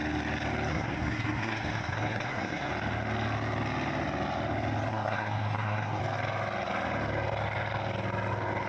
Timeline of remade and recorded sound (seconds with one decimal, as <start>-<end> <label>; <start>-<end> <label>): 0.0-0.7 recorded; 0.7-2.7 remade; 2.7-4.9 recorded; 4.9-6.0 remade; 6.0-8.7 recorded